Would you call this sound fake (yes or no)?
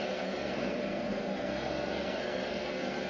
yes